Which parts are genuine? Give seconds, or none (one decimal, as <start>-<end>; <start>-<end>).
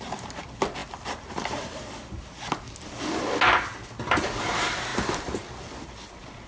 0.0-6.5